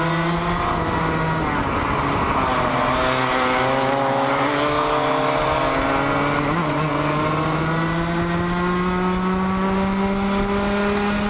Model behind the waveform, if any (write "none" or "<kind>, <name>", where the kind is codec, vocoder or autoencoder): none